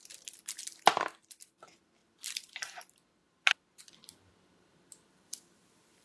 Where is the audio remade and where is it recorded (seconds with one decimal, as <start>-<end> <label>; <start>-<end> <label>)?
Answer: 0.0-6.0 recorded